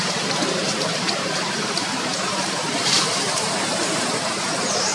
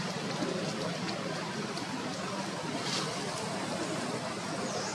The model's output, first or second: first